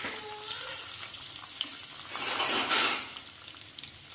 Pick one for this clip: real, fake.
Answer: real